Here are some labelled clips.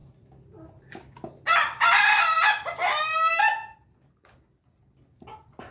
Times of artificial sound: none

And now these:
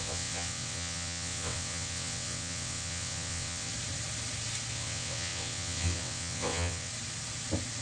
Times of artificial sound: 0.0-3.7 (vocoder, WaveNeXt); 4.7-6.9

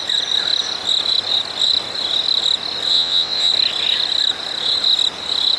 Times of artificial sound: 2.9-3.5 (vocoder, WaveNeXt)

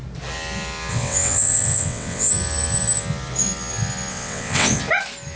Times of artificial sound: 0.9-2.3 (vocoder, WaveNeXt); 4.1-4.8